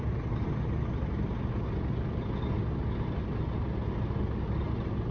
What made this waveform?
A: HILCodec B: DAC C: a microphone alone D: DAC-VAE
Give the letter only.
C